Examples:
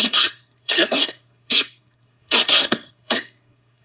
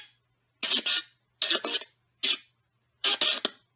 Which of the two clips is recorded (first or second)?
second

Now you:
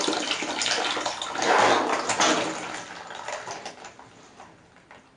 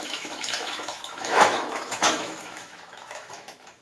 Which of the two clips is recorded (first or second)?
first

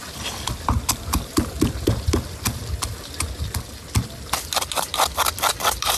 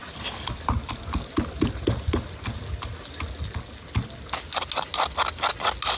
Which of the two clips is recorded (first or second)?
second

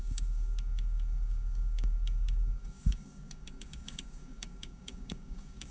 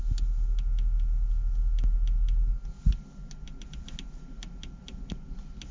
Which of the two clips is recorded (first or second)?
second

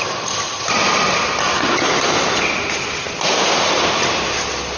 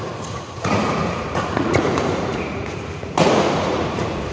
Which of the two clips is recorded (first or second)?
first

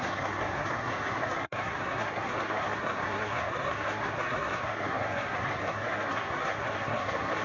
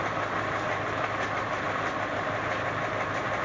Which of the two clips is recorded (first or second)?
second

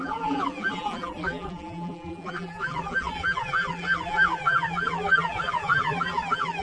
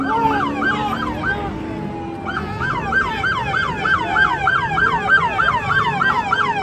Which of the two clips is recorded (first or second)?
second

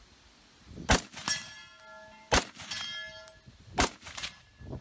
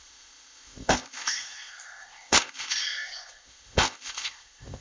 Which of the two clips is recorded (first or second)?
first